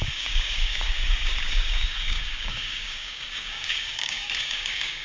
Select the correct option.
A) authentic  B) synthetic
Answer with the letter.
B